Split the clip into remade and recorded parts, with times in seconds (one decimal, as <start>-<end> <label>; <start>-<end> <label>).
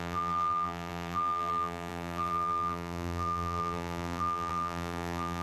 0.0-5.4 remade